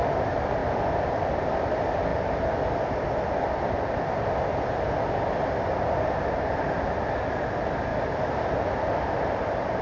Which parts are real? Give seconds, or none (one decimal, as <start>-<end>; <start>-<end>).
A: 0.0-0.6; 1.7-2.1; 4.4-7.9